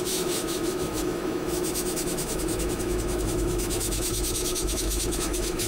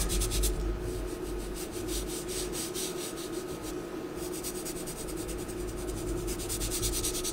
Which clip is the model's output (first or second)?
first